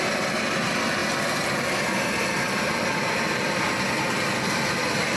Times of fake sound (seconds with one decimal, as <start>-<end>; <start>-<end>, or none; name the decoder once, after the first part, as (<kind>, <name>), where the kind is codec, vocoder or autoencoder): none